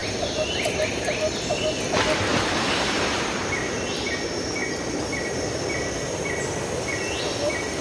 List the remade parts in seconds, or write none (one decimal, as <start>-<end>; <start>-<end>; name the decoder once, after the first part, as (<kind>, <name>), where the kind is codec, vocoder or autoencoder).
0.0-0.6 (vocoder, BigVGAN v2); 2.3-3.5